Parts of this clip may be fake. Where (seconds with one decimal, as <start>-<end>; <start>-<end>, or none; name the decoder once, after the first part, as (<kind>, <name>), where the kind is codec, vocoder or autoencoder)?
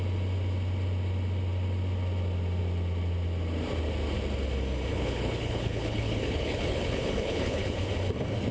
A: 4.9-7.9 (codec, HILCodec)